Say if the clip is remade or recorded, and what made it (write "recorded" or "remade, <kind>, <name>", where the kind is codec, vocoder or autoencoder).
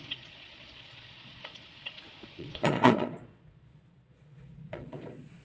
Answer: remade, vocoder, Vocos